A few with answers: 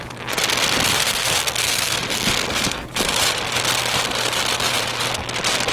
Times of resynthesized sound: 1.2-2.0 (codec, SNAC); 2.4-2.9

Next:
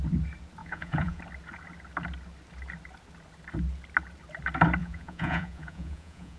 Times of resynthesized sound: 0.6-1.2 (vocoder, Vocos); 4.8-6.4

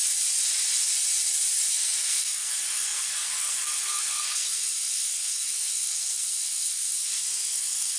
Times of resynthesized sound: 1.7-8.0 (codec, SNAC)